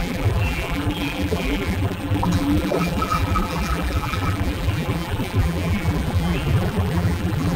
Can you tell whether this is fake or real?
fake